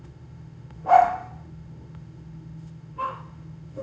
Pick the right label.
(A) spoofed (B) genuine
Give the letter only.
A